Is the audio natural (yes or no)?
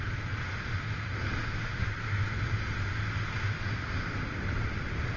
yes